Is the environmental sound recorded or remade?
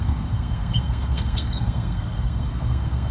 remade